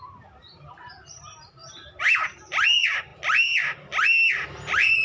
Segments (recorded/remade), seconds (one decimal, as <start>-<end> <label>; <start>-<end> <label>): 0.0-1.6 remade; 1.6-2.1 recorded; 2.1-3.1 remade; 3.1-4.5 recorded; 4.5-5.0 remade